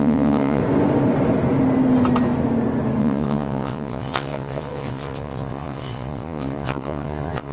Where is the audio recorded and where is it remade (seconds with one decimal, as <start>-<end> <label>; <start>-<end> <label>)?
0.0-0.6 remade; 0.6-3.0 recorded; 3.0-7.5 remade